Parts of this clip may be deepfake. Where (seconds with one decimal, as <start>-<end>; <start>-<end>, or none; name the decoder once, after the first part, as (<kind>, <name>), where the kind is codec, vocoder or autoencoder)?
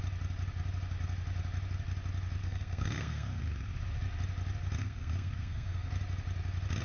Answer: 2.4-3.4 (codec, SNAC); 4.8-5.9